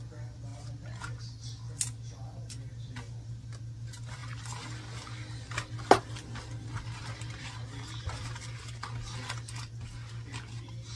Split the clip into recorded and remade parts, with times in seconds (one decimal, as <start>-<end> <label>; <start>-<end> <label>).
0.0-11.0 recorded